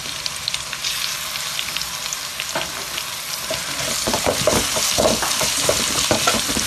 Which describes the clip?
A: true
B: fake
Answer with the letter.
A